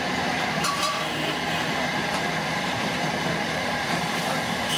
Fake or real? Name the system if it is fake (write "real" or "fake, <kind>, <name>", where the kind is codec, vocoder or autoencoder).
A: fake, vocoder, BigVGAN v2